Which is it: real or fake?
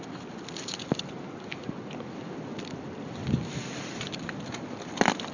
real